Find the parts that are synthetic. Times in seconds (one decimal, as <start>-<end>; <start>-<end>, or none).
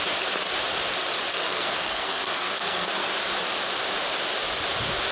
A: 1.3-3.1